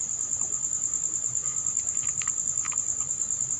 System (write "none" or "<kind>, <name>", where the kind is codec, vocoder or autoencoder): none